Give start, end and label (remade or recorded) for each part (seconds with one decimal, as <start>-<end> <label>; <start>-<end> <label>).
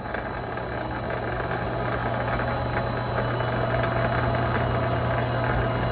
0.0-5.9 recorded